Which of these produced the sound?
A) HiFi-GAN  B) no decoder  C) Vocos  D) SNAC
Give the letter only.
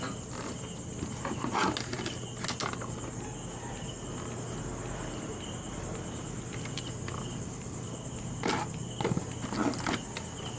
B